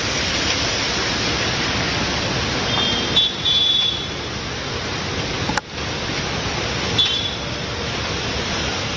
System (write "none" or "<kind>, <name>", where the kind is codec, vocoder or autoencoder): none